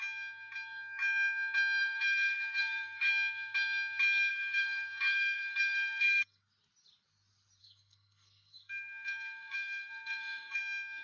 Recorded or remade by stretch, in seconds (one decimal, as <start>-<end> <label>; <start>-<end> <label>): 0.0-1.8 recorded; 1.8-3.1 remade; 3.1-4.3 recorded; 4.3-6.4 remade; 6.4-7.6 recorded; 7.6-10.6 remade; 10.6-11.0 recorded